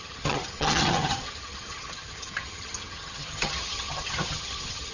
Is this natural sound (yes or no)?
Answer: no